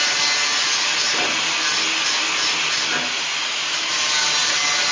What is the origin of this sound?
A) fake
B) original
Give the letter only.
B